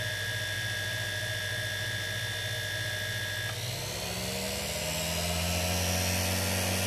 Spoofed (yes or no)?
no